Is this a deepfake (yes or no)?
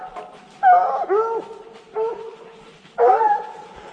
no